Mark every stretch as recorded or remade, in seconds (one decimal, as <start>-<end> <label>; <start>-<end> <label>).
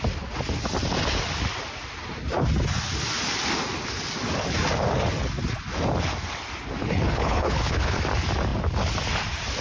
0.0-6.8 recorded; 6.8-8.0 remade; 8.0-9.6 recorded